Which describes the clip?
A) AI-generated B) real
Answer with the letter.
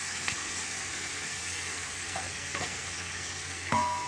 A